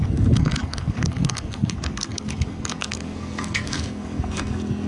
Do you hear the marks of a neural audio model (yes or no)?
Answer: yes